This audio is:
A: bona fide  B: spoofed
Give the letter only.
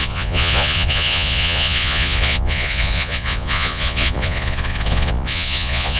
B